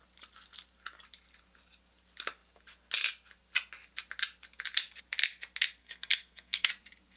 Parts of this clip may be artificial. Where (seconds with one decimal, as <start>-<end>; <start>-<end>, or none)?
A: 5.8-6.7